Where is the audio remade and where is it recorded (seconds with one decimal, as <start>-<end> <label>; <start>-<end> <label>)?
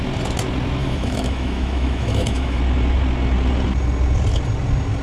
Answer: 0.0-0.8 recorded; 0.8-2.6 remade; 2.6-5.0 recorded